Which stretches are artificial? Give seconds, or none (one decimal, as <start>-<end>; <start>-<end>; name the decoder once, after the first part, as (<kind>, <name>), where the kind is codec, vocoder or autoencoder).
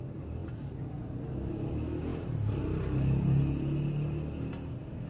none